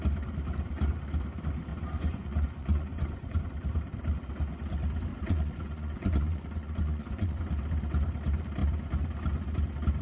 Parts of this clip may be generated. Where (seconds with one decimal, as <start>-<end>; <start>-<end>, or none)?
1.7-3.4; 5.1-7.4